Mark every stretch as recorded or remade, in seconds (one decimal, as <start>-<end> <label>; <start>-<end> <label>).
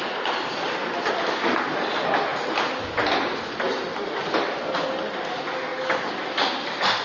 0.0-7.0 recorded